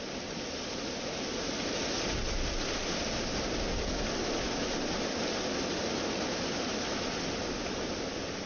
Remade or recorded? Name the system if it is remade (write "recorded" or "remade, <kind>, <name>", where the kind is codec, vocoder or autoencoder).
recorded